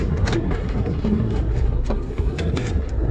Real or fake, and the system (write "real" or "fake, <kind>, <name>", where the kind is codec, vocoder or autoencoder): fake, codec, SNAC